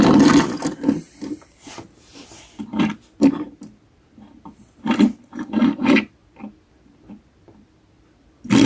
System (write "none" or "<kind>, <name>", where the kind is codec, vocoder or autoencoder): none